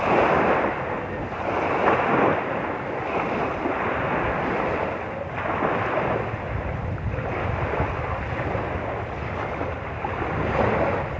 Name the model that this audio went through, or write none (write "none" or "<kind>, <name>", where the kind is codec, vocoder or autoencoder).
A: none